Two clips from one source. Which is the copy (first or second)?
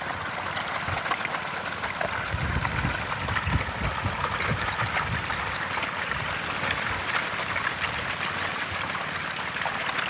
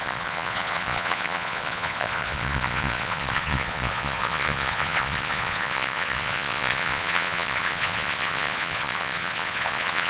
second